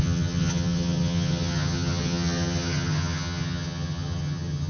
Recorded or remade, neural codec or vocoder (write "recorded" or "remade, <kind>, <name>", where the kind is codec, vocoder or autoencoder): remade, vocoder, HiFi-GAN